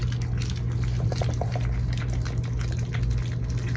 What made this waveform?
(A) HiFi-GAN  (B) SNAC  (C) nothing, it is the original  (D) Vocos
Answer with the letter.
C